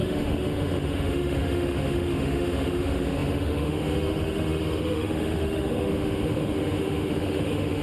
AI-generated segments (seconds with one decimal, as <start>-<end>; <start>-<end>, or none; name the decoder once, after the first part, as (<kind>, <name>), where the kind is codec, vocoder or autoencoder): 0.0-7.8 (autoencoder, DAC-VAE)